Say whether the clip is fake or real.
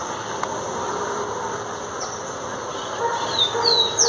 real